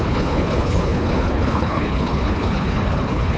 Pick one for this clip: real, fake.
fake